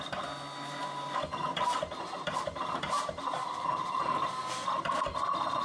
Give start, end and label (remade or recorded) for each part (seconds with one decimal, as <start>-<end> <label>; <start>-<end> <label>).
0.0-1.5 recorded; 1.5-4.5 remade; 4.5-5.6 recorded